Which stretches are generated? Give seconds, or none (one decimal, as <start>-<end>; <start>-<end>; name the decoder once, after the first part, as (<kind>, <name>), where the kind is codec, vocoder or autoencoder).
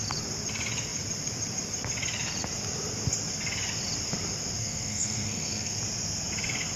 4.6-5.8 (codec, SNAC)